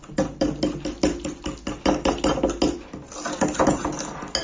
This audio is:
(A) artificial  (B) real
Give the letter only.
B